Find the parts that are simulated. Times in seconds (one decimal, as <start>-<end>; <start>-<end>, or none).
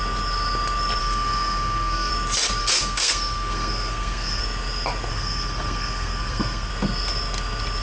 1.0-2.1; 2.6-4.4; 5.1-6.7